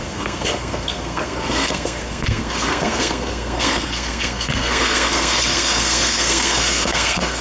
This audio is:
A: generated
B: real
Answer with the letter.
A